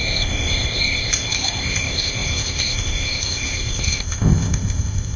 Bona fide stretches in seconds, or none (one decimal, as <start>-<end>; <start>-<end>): none